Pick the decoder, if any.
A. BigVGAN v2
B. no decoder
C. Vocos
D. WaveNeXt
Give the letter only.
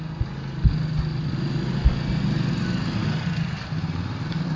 B